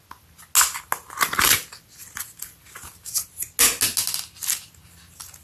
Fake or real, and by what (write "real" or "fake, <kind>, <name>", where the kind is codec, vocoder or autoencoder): real